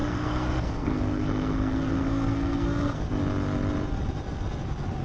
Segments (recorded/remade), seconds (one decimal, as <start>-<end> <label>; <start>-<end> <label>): 0.0-3.0 remade; 3.0-5.0 recorded